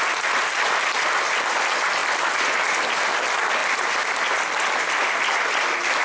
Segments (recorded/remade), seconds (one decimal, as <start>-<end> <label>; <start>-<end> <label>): 0.0-6.0 recorded